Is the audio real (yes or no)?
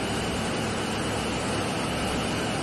yes